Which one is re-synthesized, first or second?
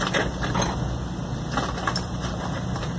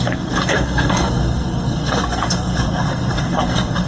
second